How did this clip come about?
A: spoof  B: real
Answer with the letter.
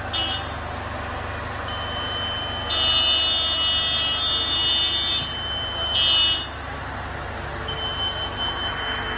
B